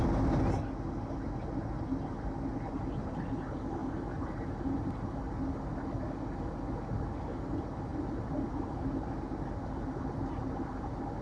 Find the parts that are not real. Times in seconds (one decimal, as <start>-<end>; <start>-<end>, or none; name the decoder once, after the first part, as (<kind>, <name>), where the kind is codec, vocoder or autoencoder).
2.5-3.3 (vocoder, BigVGAN v2); 3.8-4.5